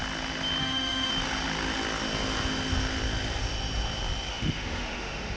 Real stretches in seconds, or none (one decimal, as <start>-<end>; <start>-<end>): 0.0-0.6; 1.1-4.3